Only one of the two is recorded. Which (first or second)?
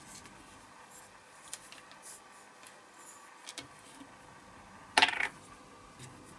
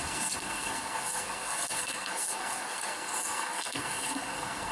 first